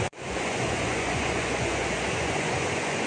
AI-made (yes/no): yes